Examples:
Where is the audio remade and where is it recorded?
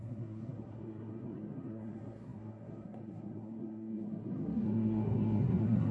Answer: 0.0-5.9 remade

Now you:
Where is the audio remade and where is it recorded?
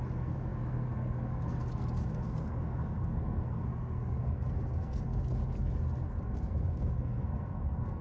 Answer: 0.0-5.4 remade; 5.4-6.2 recorded; 6.2-8.0 remade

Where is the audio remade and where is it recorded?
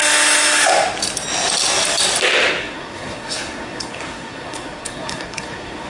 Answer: 0.0-2.6 recorded; 2.6-5.9 remade